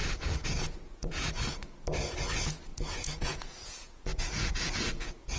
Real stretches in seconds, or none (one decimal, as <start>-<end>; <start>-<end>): 1.5-2.7